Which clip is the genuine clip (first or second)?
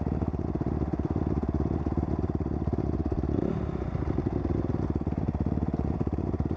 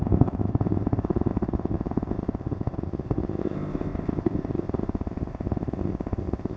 first